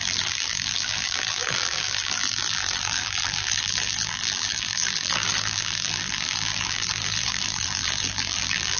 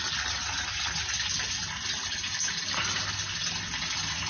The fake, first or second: first